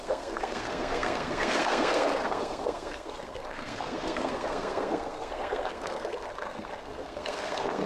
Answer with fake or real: fake